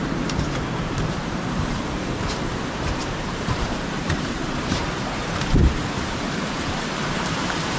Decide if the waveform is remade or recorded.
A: remade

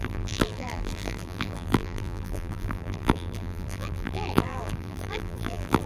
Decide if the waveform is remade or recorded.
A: remade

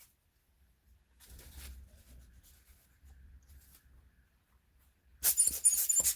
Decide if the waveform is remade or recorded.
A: recorded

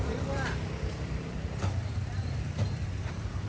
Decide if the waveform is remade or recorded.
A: remade